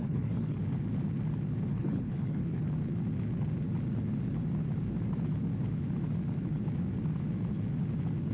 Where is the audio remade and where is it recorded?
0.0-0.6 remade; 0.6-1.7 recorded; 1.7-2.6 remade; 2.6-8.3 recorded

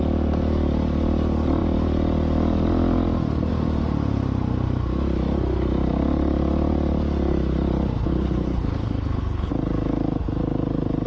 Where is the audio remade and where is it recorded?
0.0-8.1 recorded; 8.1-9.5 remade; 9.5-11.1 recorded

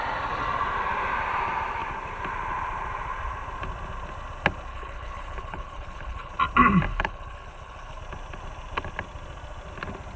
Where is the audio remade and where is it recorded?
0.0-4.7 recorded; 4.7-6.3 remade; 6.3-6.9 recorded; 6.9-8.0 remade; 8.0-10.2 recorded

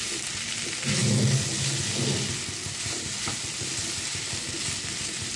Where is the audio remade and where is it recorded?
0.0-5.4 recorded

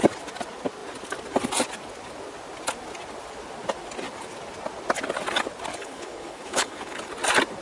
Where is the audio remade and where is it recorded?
0.0-5.7 recorded; 5.7-7.0 remade; 7.0-7.6 recorded

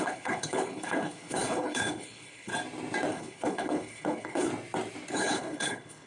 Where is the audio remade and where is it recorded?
0.0-2.5 remade; 2.5-3.1 recorded; 3.1-4.5 remade; 4.5-5.1 recorded; 5.1-6.1 remade